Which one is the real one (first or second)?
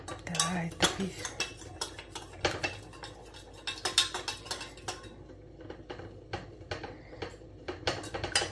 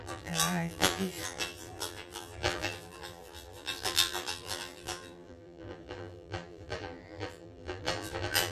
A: first